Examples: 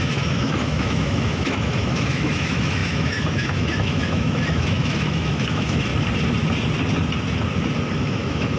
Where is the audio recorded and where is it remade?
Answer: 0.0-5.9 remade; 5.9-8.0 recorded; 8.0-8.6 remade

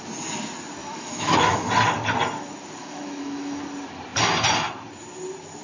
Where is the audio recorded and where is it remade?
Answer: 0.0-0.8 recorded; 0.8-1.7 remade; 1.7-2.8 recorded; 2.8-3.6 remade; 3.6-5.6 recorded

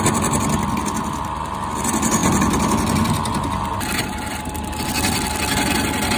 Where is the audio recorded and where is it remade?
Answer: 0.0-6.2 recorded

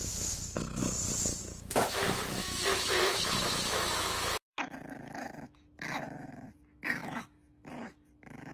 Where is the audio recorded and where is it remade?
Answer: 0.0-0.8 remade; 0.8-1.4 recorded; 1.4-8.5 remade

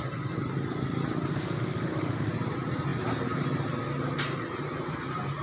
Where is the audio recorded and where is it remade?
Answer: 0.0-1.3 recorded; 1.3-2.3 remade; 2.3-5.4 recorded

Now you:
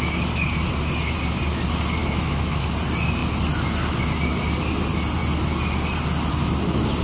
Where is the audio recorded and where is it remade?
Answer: 0.0-2.0 recorded; 2.0-2.6 remade; 2.6-7.0 recorded